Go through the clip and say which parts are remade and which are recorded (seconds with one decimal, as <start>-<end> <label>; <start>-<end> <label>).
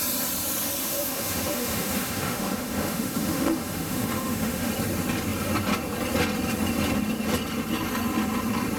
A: 0.0-0.8 recorded; 0.8-4.7 remade; 4.7-8.8 recorded